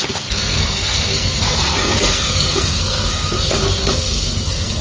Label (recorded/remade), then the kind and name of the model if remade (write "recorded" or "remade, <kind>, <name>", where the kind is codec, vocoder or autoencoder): remade, codec, SNAC